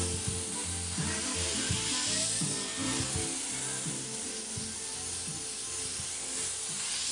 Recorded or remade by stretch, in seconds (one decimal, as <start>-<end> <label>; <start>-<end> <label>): 0.0-7.1 recorded